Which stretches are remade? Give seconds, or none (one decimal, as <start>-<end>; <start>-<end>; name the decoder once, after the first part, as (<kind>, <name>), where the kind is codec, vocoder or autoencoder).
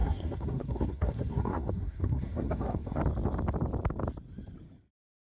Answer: 0.0-3.0 (codec, SNAC)